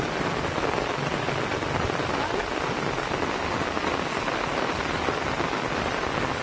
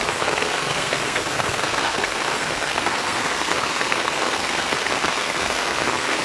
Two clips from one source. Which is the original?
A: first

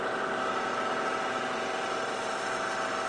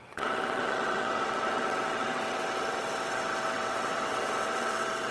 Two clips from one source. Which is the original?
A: first